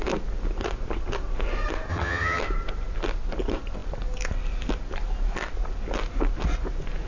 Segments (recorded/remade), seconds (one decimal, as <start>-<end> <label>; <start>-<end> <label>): 0.0-1.9 recorded; 1.9-2.4 remade; 2.4-7.1 recorded